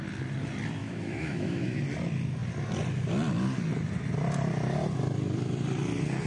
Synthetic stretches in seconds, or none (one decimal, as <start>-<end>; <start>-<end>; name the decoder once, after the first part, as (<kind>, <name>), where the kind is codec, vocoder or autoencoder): 0.8-1.8 (autoencoder, DAC-VAE)